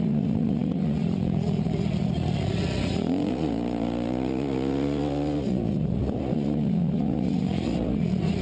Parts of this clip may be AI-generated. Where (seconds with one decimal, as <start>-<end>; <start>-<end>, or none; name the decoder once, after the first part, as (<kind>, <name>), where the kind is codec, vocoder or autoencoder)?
0.0-8.4 (vocoder, Vocos)